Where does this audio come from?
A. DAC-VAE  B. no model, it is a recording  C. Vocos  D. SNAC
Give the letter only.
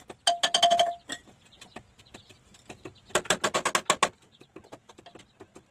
B